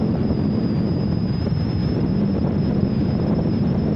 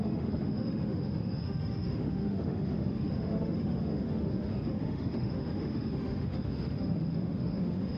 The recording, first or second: first